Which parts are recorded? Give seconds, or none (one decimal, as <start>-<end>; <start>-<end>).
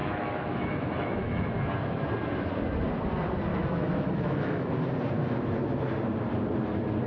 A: 1.5-3.5; 4.8-7.1